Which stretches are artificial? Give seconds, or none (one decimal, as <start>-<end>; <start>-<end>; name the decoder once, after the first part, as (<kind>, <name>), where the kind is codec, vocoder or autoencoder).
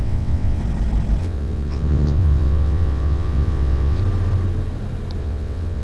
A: 0.0-0.6 (vocoder, WaveNeXt); 1.2-4.0; 5.2-5.8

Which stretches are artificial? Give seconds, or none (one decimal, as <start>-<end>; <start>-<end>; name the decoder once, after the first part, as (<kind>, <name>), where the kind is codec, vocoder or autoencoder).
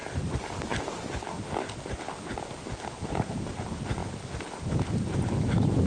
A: none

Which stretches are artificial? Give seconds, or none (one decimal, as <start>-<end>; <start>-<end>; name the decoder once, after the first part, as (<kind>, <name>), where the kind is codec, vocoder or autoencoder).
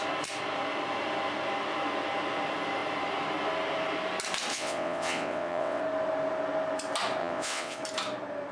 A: 4.5-5.8 (vocoder, WaveNeXt); 7.2-7.8